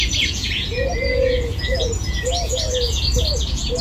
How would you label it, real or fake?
fake